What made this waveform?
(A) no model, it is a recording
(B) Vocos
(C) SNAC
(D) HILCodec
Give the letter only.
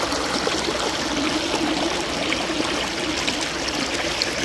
A